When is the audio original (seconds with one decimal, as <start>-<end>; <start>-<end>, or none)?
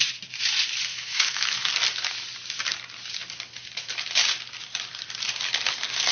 0.0-0.9; 1.7-6.1